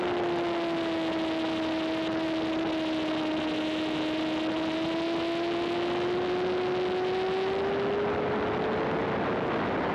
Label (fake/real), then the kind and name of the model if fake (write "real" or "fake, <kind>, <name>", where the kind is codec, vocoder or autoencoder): real